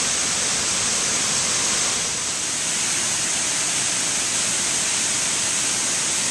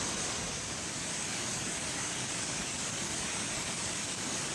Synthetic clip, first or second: second